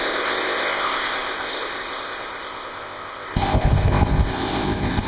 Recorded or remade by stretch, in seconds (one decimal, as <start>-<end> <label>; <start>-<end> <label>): 0.0-5.1 remade